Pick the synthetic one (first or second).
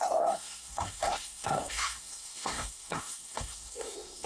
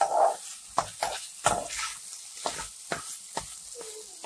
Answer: first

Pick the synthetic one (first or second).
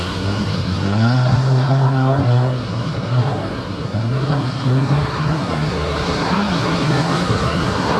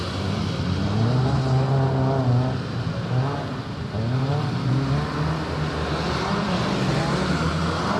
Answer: first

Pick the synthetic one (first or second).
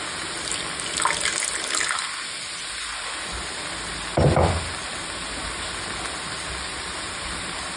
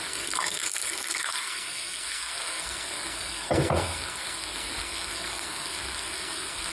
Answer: second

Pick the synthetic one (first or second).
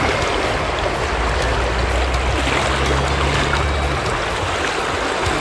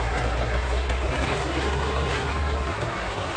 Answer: second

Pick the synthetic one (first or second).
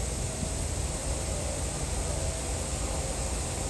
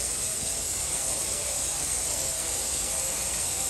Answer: second